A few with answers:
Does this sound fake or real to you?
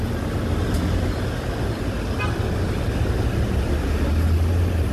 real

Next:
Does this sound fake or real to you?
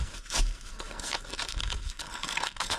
fake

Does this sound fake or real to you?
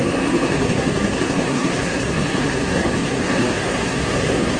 fake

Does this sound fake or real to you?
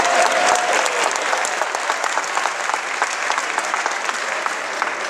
real